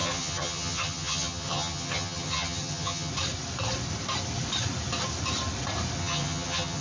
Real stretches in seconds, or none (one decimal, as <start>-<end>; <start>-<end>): 3.1-6.0